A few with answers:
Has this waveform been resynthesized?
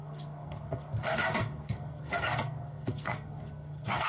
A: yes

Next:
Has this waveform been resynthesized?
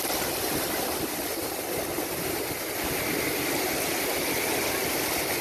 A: no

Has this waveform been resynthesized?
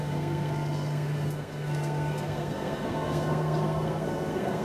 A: yes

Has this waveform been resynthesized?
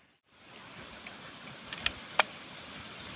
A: no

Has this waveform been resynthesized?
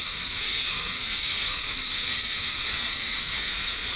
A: yes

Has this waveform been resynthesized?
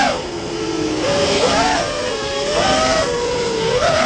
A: yes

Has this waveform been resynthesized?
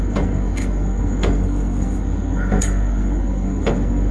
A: yes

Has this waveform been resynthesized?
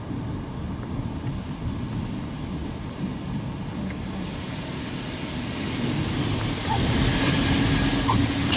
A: no